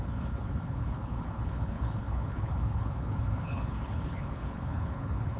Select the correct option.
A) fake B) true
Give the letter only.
A